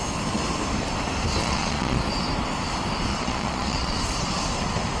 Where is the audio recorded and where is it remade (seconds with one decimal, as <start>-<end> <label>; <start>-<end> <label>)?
0.0-1.4 recorded; 1.4-2.0 remade; 2.0-3.1 recorded; 3.1-4.0 remade; 4.0-5.0 recorded